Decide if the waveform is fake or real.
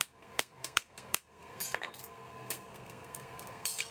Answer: fake